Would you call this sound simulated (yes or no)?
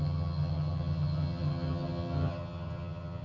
yes